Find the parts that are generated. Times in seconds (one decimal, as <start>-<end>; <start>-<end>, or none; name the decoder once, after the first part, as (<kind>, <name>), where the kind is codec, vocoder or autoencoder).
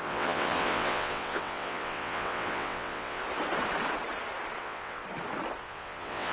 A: 0.0-3.2 (vocoder, WaveNeXt); 4.6-5.0; 5.6-6.3